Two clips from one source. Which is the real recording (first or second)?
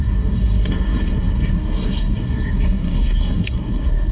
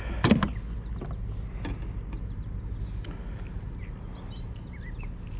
second